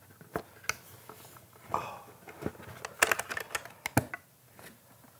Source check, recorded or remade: recorded